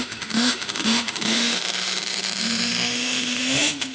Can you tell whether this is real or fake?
fake